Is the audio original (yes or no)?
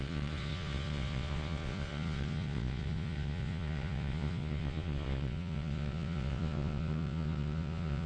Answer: no